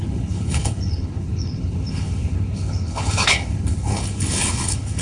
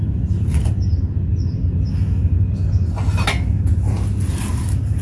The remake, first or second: first